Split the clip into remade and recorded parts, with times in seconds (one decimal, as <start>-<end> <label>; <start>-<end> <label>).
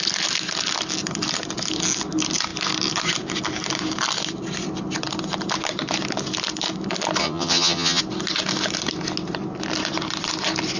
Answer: 0.0-7.2 recorded; 7.2-8.0 remade; 8.0-10.8 recorded